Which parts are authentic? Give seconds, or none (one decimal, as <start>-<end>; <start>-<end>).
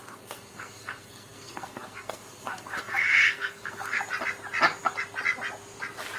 4.0-6.2